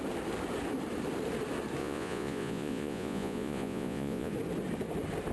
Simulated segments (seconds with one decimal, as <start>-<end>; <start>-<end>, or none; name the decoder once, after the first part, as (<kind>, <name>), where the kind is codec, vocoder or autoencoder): 1.8-4.3 (vocoder, Vocos)